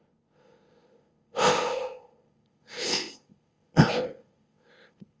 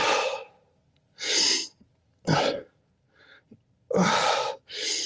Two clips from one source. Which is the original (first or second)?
second